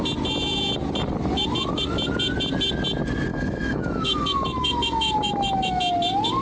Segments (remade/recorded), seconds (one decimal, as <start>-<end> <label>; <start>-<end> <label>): 0.0-3.3 recorded; 3.3-5.8 remade; 5.8-6.4 recorded